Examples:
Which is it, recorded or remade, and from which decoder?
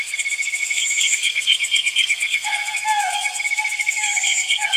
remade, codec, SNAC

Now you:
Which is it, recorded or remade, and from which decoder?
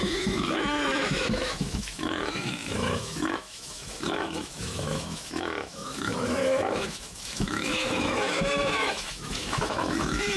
remade, autoencoder, DAC-VAE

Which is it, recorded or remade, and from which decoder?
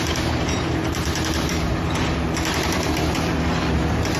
remade, vocoder, BigVGAN v2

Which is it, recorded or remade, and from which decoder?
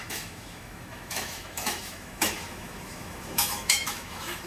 remade, autoencoder, DAC-VAE